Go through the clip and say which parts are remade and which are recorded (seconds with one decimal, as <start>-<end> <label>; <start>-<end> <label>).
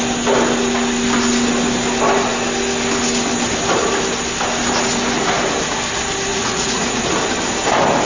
0.0-6.3 recorded; 6.3-7.0 remade; 7.0-8.1 recorded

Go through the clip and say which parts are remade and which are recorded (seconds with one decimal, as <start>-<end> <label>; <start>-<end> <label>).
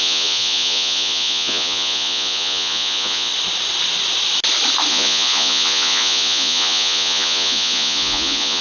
0.0-3.3 remade; 3.3-4.9 recorded; 4.9-8.6 remade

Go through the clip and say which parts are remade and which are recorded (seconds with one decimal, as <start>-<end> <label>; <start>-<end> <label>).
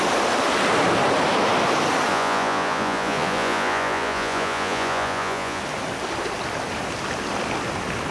0.0-2.1 recorded; 2.1-5.6 remade; 5.6-8.1 recorded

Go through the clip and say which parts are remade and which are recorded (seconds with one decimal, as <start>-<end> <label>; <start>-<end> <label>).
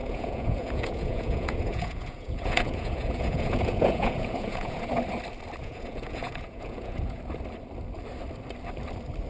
0.0-4.9 remade; 4.9-5.6 recorded; 5.6-7.2 remade; 7.2-9.3 recorded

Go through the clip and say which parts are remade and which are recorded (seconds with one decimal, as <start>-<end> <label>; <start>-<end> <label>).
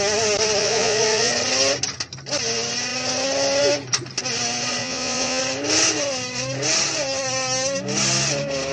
0.0-0.6 recorded; 0.6-1.3 remade; 1.3-4.8 recorded; 4.8-5.4 remade; 5.4-8.7 recorded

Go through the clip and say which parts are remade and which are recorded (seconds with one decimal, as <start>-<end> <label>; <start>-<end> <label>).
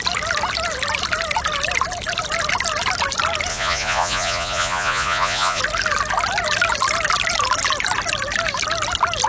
0.0-3.5 recorded; 3.5-5.6 remade; 5.6-9.3 recorded